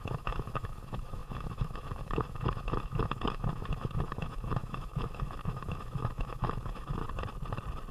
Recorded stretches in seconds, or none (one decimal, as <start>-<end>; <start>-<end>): 7.0-7.9